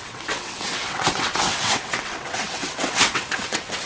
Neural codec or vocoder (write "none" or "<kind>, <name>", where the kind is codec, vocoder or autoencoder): vocoder, WaveNeXt